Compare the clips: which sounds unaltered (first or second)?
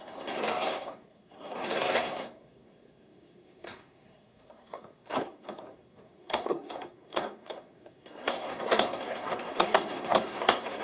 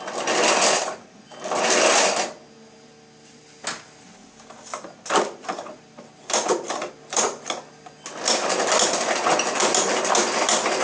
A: second